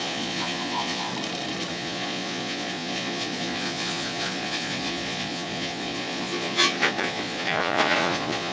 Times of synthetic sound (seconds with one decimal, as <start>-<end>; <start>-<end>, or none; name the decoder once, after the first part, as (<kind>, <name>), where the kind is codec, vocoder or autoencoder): 0.0-1.1 (vocoder, Vocos); 1.7-8.5